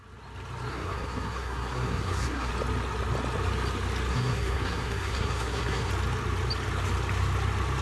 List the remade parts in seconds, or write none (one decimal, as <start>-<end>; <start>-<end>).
0.7-2.5; 4.1-5.9